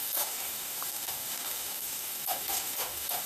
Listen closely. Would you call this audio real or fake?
fake